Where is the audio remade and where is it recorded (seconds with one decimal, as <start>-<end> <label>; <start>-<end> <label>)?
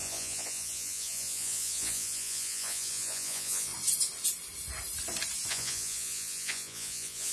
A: 0.0-3.7 remade; 3.7-5.5 recorded; 5.5-7.3 remade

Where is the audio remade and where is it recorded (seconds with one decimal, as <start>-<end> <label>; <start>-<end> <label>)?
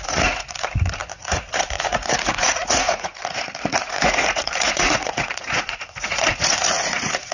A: 0.0-7.3 remade